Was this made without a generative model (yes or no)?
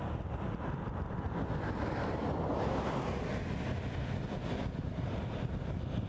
yes